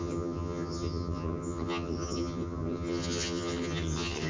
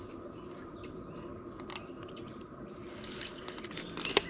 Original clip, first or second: second